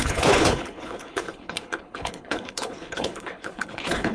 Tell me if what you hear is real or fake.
fake